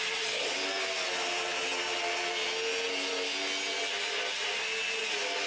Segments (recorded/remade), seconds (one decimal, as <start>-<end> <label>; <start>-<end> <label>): 0.0-5.5 recorded